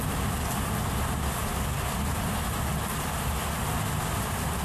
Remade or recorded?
recorded